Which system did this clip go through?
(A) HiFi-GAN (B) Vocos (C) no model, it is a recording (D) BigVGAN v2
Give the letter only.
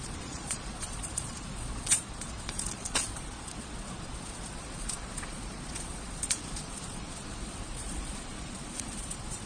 B